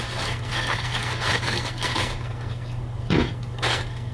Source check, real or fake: fake